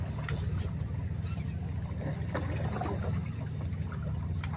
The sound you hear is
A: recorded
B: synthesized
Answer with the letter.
A